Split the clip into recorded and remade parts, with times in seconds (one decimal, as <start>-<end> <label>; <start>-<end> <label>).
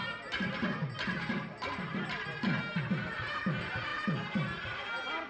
0.0-5.3 recorded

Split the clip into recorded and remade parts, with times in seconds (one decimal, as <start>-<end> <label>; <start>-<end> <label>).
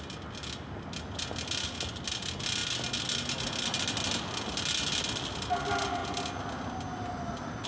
0.0-7.7 recorded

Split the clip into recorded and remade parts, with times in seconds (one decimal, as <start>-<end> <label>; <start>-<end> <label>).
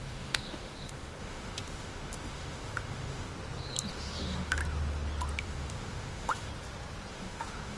0.0-3.3 remade; 3.3-3.9 recorded; 3.9-4.6 remade; 4.6-5.4 recorded; 5.4-6.5 remade; 6.5-7.1 recorded; 7.1-7.8 remade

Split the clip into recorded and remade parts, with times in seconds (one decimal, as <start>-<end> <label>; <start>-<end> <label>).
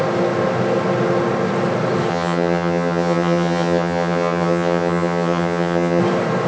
0.0-2.1 recorded; 2.1-6.0 remade; 6.0-6.5 recorded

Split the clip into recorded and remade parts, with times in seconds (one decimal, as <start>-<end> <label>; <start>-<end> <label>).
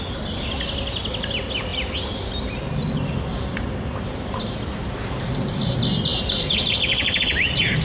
0.0-6.1 recorded; 6.1-7.2 remade; 7.2-7.8 recorded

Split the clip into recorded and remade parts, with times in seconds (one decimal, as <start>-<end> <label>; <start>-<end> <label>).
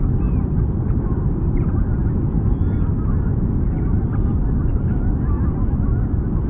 0.0-6.5 recorded